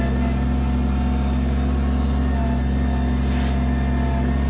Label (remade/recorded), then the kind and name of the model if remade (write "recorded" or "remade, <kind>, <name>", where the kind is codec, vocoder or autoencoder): recorded